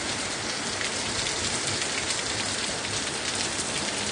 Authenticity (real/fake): real